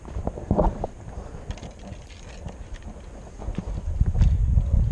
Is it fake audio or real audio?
real